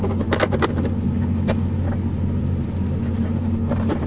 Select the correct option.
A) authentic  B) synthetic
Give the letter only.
A